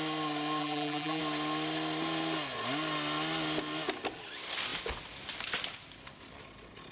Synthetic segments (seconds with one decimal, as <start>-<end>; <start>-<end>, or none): 0.6-1.2